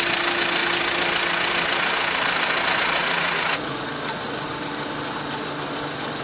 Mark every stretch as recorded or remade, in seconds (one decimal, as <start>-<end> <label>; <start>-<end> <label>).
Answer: 0.0-3.0 recorded; 3.0-3.9 remade; 3.9-6.2 recorded